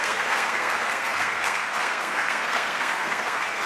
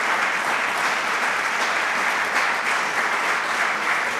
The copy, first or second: first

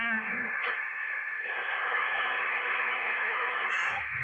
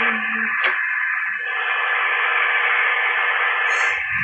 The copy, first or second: first